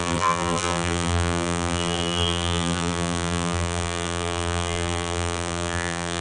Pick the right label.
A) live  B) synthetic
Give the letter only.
B